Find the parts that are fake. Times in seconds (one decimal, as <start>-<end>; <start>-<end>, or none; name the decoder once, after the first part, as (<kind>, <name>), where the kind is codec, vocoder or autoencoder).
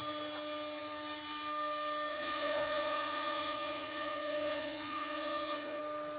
2.1-5.8 (vocoder, Vocos)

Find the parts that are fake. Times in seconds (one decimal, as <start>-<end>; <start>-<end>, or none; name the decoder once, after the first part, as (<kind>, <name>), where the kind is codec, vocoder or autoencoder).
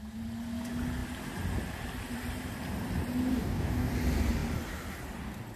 3.3-3.9 (codec, DAC)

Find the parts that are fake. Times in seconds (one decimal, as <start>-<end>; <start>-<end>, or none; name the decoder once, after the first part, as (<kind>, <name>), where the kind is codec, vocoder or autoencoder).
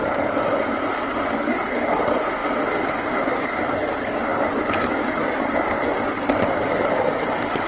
none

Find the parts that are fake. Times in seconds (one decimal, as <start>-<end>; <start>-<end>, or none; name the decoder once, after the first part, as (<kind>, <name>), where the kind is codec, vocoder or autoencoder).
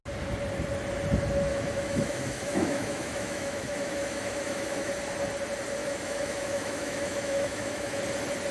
1.5-4.9 (autoencoder, DAC-VAE); 5.8-8.0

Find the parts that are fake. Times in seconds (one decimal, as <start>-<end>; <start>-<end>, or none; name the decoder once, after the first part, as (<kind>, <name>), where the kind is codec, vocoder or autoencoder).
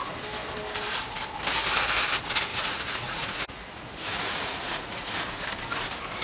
2.5-5.1 (vocoder, Vocos)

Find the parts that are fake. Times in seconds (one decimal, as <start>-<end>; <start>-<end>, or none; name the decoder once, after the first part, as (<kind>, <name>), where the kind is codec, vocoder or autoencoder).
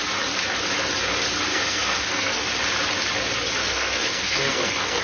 1.5-2.5 (codec, SNAC); 3.6-5.0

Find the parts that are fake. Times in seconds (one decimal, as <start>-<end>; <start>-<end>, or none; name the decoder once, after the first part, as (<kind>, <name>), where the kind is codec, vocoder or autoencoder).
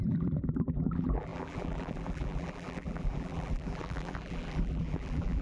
0.0-5.4 (vocoder, BigVGAN v2)